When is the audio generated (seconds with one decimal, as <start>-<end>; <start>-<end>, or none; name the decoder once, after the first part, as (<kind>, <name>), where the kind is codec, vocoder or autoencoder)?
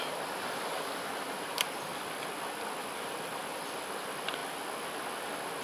none